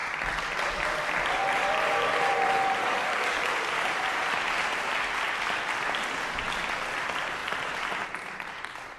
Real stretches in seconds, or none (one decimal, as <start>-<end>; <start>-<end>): 0.0-2.8; 3.5-9.0